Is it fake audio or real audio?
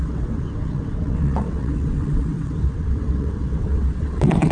fake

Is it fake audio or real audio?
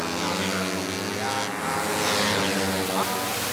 real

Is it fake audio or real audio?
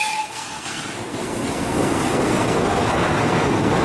fake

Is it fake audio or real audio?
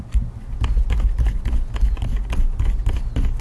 real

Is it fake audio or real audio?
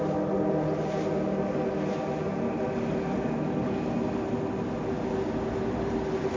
real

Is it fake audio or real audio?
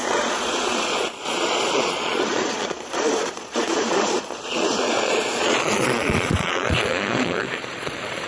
fake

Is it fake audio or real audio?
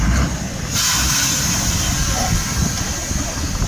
real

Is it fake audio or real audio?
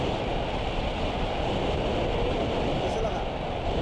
real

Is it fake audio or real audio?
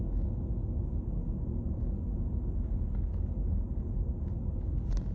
real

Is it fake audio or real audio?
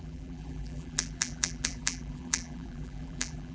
fake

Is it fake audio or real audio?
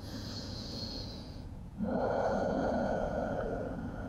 fake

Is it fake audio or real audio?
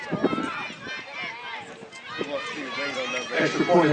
real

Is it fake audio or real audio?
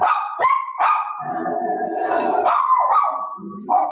real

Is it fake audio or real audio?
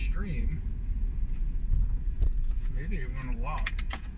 fake